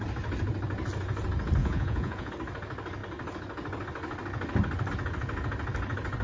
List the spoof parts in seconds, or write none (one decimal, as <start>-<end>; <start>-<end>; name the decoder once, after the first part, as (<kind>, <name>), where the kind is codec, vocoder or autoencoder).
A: 1.6-2.3 (vocoder, Vocos)